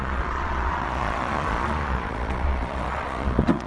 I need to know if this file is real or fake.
fake